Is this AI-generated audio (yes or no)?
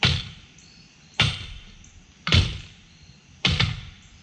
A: yes